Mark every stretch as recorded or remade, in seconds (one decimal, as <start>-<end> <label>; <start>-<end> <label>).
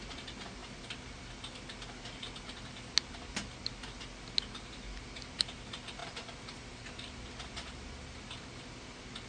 0.0-0.6 recorded; 0.6-2.9 remade; 2.9-6.0 recorded; 6.0-8.6 remade; 8.6-9.3 recorded